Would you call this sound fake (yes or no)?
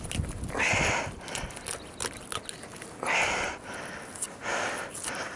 no